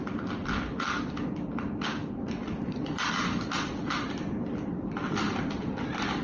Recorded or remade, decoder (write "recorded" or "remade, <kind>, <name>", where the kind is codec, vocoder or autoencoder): recorded